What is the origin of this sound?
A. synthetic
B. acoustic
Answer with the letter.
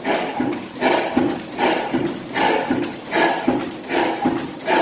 B